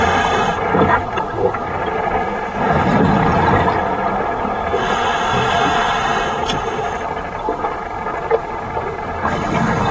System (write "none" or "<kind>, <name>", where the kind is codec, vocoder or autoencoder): vocoder, BigVGAN v2